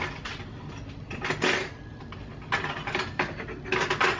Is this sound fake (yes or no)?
no